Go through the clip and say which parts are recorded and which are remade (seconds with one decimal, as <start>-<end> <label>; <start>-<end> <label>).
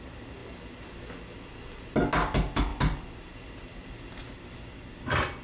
0.0-5.4 recorded